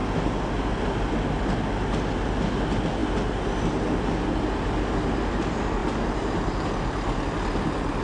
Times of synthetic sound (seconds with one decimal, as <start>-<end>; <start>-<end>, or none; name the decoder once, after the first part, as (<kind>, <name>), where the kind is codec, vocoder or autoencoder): none